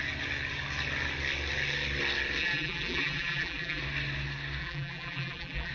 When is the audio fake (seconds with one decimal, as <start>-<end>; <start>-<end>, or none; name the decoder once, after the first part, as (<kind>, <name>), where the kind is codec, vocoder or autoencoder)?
2.4-3.8 (vocoder, BigVGAN v2); 4.6-5.7